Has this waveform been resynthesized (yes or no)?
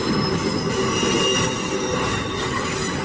no